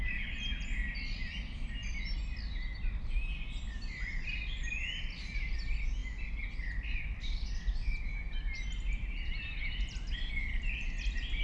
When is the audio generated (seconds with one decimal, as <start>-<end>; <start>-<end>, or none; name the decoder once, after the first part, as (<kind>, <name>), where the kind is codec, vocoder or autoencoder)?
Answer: none